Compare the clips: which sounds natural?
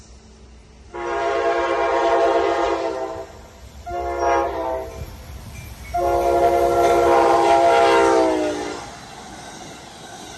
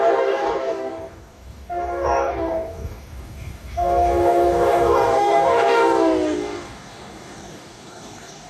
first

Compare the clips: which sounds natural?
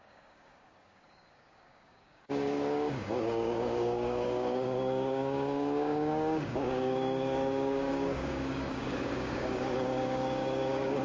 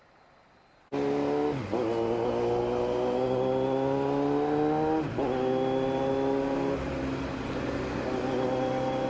second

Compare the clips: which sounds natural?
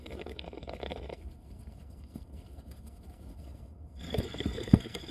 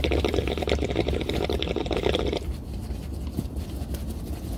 second